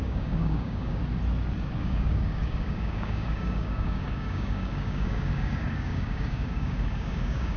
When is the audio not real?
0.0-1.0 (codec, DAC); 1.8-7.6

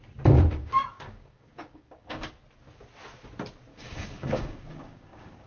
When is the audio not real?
0.6-2.3 (codec, DAC); 3.7-5.5

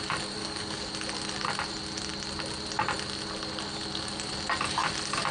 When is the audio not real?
0.4-0.9 (codec, DAC)

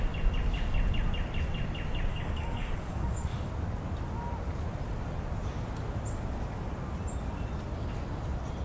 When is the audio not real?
2.1-3.5 (codec, DAC)

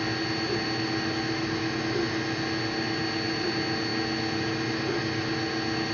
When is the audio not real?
none